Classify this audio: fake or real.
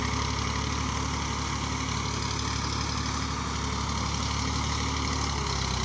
real